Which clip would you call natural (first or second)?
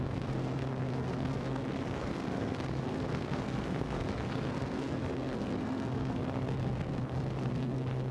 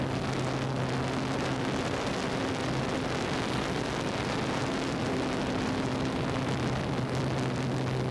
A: second